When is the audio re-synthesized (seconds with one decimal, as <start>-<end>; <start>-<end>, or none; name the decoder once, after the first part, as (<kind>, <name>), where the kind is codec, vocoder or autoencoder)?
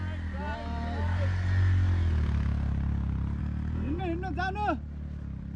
3.4-4.0 (codec, SNAC)